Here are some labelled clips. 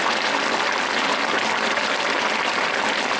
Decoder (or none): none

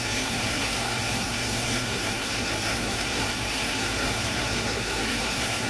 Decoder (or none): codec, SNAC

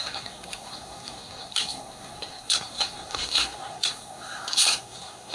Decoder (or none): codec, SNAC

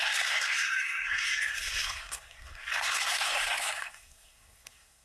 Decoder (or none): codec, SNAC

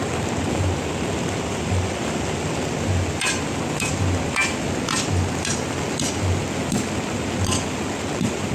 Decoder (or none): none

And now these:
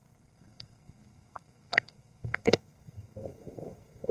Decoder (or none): codec, SNAC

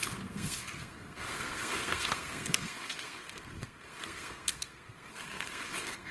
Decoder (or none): codec, SNAC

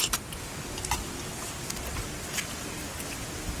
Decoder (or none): none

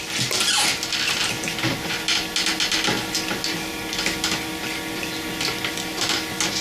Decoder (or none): none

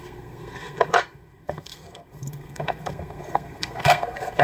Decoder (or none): codec, SNAC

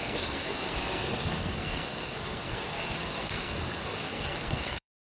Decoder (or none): codec, SNAC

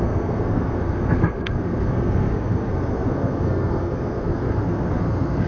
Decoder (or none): codec, SNAC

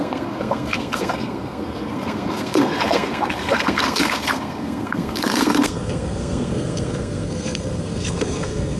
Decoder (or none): codec, SNAC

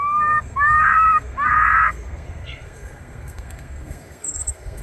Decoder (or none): codec, SNAC